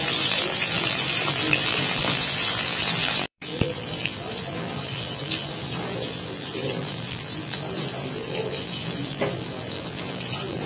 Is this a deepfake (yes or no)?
yes